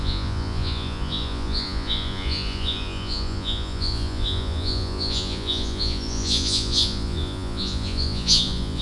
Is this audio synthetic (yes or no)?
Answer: yes